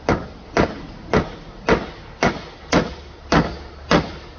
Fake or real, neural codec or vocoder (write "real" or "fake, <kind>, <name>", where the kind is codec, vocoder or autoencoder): real